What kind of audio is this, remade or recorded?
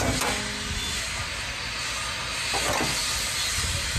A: recorded